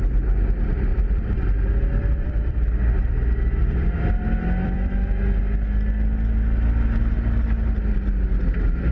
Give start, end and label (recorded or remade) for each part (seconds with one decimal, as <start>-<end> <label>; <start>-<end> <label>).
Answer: 0.0-0.9 recorded; 0.9-3.1 remade; 3.1-3.6 recorded; 3.6-5.4 remade; 5.4-8.9 recorded